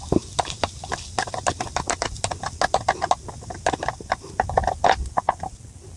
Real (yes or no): yes